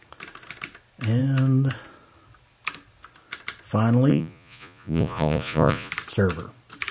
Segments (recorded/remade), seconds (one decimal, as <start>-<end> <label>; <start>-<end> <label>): 0.0-4.1 recorded; 4.1-5.9 remade; 5.9-6.9 recorded